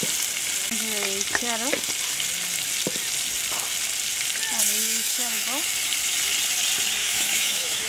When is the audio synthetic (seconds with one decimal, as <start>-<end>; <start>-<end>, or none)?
4.8-5.4; 7.0-7.9